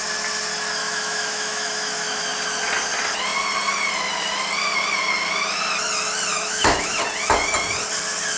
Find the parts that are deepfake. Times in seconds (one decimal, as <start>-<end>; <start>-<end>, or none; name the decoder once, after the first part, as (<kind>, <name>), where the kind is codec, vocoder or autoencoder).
0.8-2.2 (autoencoder, DAC-VAE); 6.3-6.9